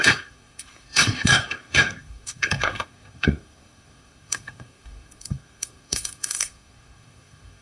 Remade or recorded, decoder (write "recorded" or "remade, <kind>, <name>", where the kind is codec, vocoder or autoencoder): remade, codec, SNAC